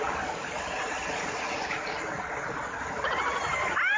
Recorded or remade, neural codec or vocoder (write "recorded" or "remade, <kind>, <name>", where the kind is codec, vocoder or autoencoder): recorded